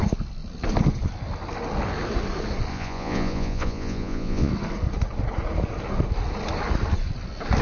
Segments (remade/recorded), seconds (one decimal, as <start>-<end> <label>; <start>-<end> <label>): 0.0-2.7 recorded; 2.7-4.5 remade; 4.5-7.6 recorded